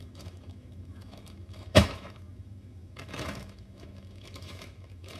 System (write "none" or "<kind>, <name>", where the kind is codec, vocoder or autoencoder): autoencoder, DAC-VAE